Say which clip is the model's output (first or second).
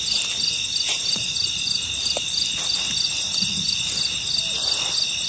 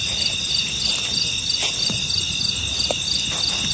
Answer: second